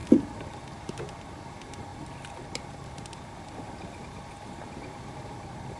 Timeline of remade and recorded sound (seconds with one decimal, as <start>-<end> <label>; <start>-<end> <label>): 0.0-5.8 remade